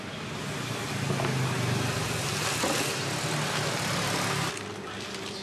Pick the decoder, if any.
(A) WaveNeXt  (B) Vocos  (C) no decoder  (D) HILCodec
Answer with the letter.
C